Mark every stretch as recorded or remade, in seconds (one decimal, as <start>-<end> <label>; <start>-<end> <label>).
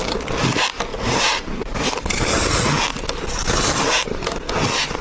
0.0-0.9 recorded; 0.9-1.9 remade; 1.9-5.0 recorded